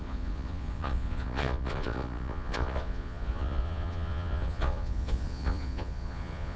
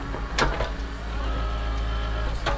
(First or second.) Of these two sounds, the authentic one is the second